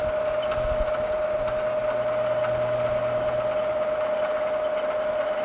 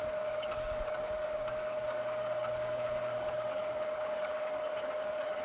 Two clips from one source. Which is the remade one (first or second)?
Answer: second